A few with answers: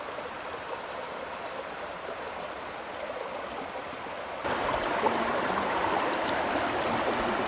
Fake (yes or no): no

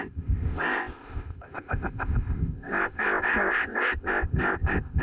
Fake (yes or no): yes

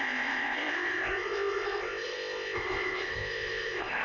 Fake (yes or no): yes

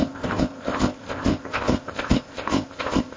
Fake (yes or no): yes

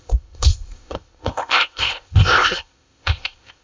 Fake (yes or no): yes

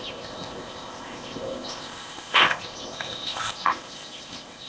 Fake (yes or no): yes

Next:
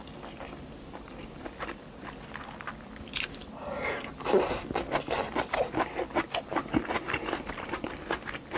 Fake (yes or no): no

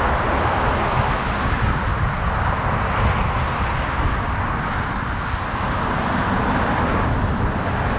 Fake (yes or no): no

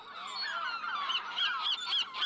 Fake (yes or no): no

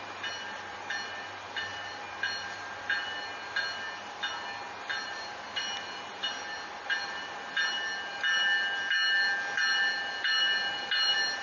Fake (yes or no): no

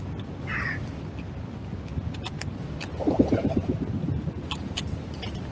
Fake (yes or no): no